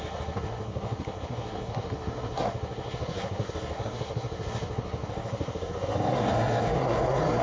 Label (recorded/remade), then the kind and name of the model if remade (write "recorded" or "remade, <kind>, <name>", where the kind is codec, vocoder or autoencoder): remade, codec, SNAC